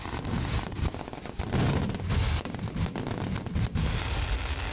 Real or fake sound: real